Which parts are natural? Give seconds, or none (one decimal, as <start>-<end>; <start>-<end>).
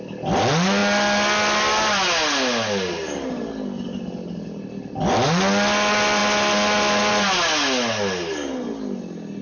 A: 0.0-9.4